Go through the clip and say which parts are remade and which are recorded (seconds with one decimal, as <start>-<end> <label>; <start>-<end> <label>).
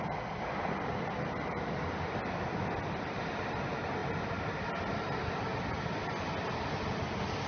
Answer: 0.0-7.5 recorded